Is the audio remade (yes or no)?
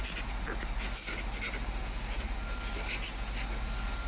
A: no